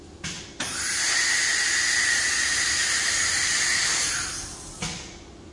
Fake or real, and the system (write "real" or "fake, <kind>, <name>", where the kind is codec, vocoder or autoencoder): real